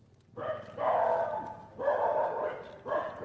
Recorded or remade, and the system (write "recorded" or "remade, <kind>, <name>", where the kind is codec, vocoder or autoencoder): recorded